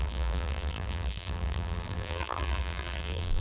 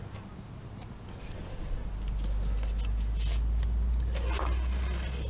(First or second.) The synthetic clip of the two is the first